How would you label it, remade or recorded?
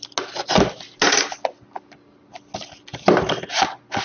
recorded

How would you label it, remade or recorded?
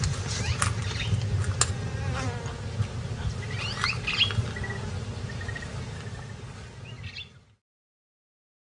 recorded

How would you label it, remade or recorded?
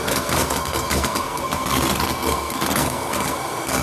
remade